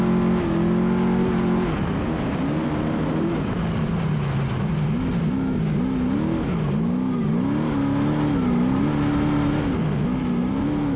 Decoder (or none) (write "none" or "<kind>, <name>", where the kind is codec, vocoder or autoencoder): none